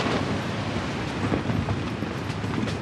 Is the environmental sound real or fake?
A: real